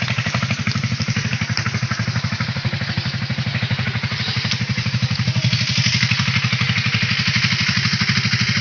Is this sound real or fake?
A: real